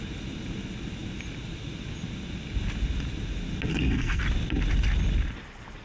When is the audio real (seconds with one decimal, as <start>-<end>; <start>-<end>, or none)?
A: 0.0-3.7; 4.2-5.8

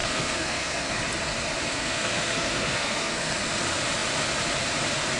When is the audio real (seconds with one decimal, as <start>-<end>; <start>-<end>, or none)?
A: 0.9-1.7; 3.3-5.2

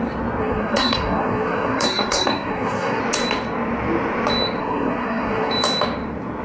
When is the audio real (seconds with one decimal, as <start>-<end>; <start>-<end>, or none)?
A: 0.0-0.4; 3.0-4.6; 5.5-6.4